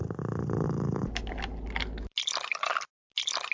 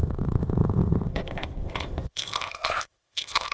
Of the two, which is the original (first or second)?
first